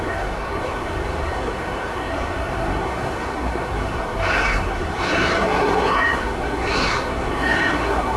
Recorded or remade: remade